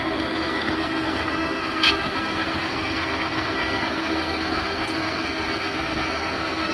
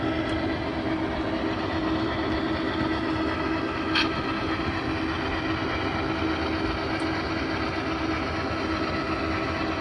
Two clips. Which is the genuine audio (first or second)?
second